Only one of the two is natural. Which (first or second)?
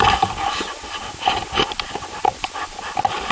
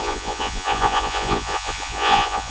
first